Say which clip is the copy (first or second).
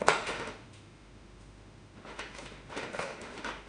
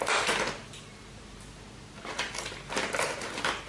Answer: first